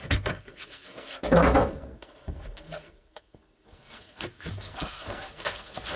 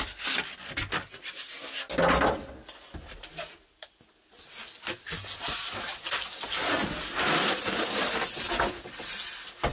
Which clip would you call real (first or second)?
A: second